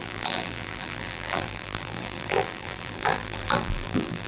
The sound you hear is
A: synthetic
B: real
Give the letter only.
A